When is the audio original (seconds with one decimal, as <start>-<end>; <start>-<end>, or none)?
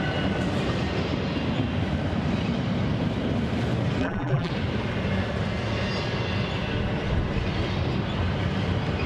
0.0-4.0; 4.5-9.1